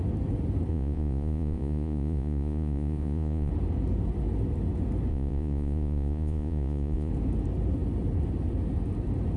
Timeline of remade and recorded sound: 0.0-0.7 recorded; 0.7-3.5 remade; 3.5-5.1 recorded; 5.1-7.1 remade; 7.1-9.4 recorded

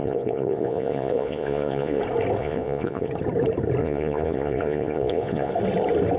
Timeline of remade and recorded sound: 0.0-2.0 remade; 2.0-2.4 recorded; 2.4-3.1 remade; 3.1-3.8 recorded; 3.8-5.5 remade; 5.5-6.2 recorded

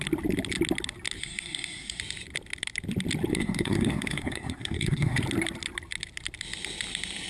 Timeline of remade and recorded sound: 0.0-1.2 recorded; 1.2-2.0 remade; 2.0-3.3 recorded; 3.3-5.2 remade; 5.2-7.3 recorded

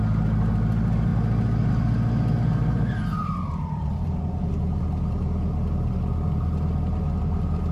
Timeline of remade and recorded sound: 0.0-7.7 recorded